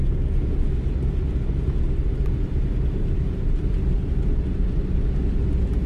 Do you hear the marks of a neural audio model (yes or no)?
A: no